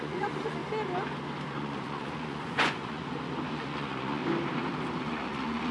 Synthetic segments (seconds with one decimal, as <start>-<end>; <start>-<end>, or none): 0.0-0.6; 1.5-3.0; 3.5-4.2; 5.0-5.7